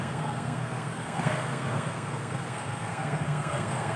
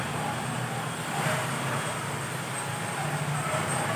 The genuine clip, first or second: second